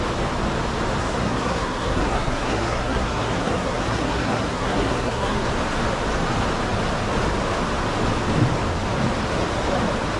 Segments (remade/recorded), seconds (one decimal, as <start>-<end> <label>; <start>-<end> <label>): 0.0-1.0 recorded; 1.0-5.5 remade; 5.5-10.2 recorded